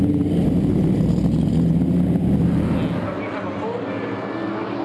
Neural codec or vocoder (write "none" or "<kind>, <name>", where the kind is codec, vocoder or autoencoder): none